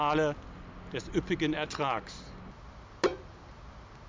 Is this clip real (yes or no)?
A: yes